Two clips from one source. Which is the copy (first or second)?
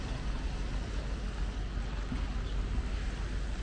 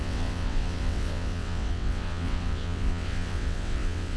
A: second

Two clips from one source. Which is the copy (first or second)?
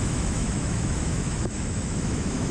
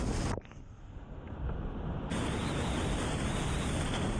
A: first